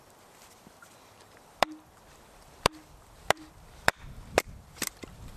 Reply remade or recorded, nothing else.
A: remade